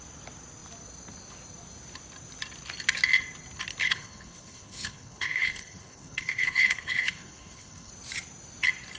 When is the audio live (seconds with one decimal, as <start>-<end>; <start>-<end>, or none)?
0.0-3.8; 7.9-9.0